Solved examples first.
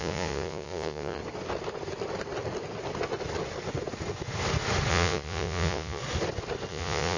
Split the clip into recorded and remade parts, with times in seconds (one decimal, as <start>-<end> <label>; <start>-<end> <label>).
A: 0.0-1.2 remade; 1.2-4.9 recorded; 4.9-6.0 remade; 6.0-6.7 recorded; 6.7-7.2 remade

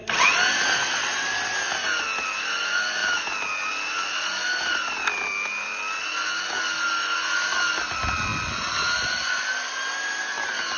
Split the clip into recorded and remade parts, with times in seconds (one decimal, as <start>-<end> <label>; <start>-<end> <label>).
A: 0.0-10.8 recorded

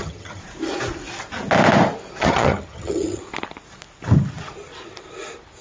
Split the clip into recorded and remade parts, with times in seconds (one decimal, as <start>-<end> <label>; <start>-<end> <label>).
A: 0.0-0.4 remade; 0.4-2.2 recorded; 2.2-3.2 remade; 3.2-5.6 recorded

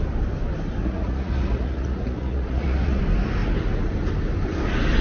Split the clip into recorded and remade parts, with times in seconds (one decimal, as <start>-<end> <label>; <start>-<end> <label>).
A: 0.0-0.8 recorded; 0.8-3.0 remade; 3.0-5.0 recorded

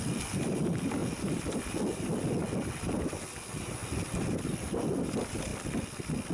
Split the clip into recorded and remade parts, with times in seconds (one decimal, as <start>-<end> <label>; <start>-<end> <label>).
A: 0.0-3.8 remade; 3.8-4.4 recorded; 4.4-6.3 remade

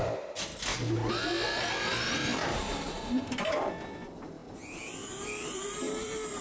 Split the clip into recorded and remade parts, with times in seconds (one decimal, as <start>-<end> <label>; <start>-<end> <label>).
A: 0.0-2.3 recorded; 2.3-3.2 remade; 3.2-4.4 recorded; 4.4-6.4 remade

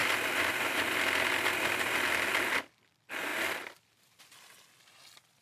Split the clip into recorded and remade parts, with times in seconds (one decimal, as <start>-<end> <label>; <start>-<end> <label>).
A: 0.0-3.3 recorded; 3.3-4.2 remade; 4.2-5.4 recorded

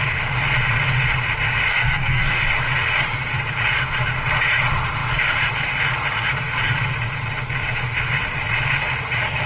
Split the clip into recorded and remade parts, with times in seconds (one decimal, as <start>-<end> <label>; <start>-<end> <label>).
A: 0.0-1.7 recorded; 1.7-2.5 remade; 2.5-9.5 recorded